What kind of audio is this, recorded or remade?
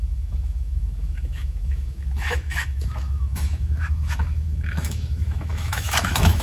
remade